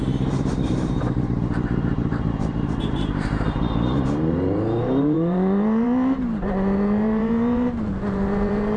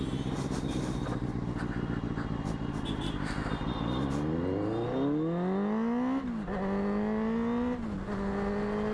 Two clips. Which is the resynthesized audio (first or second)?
first